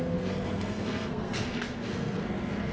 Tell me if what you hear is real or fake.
fake